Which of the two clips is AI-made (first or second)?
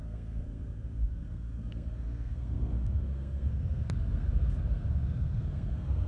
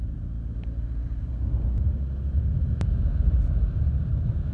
first